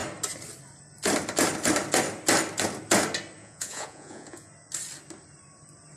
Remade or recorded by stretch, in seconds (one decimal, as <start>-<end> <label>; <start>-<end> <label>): 0.0-3.4 recorded; 3.4-4.5 remade; 4.5-6.0 recorded